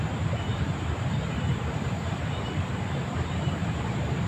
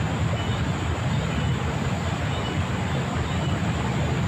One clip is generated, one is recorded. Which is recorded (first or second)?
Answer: second